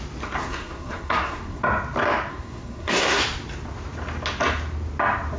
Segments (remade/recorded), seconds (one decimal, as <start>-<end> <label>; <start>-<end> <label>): 0.0-0.4 recorded; 0.4-1.6 remade; 1.6-2.3 recorded; 2.3-3.2 remade; 3.2-5.4 recorded